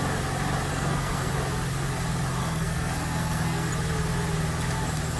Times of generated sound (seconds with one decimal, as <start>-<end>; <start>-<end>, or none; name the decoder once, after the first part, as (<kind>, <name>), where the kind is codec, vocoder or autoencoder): 0.7-1.3 (codec, SNAC); 2.4-3.7